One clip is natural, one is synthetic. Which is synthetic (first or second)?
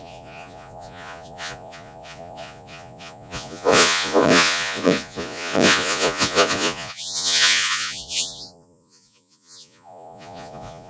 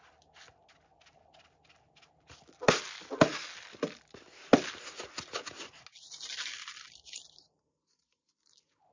first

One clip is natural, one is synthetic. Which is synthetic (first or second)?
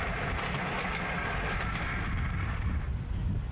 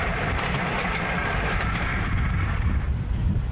second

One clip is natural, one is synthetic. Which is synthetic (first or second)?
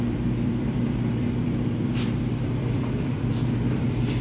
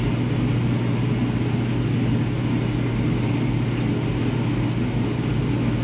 first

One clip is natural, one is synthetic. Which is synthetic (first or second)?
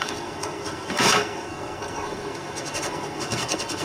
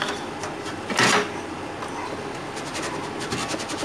first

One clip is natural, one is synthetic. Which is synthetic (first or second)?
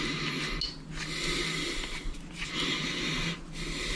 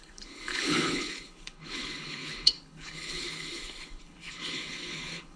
second